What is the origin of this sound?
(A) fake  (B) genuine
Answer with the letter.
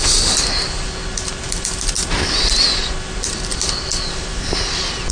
B